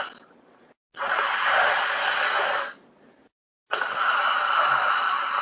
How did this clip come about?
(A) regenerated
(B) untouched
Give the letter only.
B